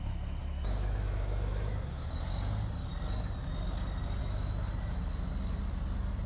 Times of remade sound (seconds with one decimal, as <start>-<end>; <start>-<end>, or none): 0.4-2.1; 4.2-5.1